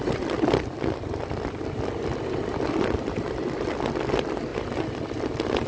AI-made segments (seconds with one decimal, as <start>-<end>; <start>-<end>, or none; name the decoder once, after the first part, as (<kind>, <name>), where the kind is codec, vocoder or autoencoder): none